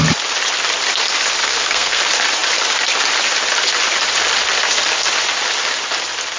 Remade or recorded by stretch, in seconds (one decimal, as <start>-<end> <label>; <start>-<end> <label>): 0.0-1.4 recorded; 1.4-2.0 remade; 2.0-6.4 recorded